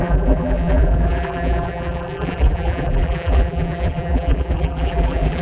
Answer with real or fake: fake